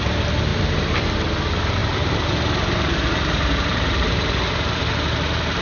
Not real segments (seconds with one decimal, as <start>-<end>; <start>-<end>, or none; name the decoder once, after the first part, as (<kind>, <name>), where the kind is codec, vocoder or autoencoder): 0.5-1.1 (vocoder, BigVGAN v2); 1.8-5.6